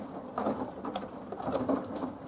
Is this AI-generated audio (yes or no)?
no